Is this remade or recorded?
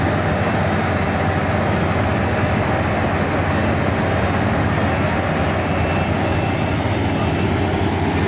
recorded